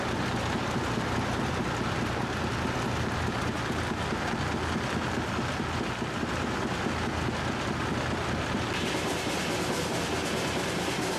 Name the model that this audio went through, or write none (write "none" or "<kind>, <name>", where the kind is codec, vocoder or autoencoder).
none